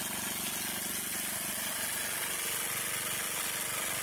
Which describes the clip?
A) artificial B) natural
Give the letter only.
B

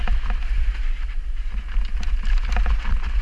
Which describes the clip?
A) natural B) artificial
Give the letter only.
A